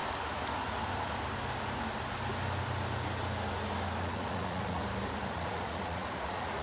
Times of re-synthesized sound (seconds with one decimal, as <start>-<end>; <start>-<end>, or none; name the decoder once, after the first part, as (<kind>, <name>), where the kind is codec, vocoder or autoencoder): 4.0-4.8 (vocoder, Vocos); 5.3-6.6